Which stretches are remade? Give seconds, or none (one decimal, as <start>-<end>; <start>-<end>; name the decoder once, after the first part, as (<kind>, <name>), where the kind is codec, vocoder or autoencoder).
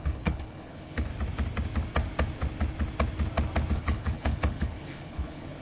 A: 0.0-1.1 (codec, HILCodec); 3.7-5.6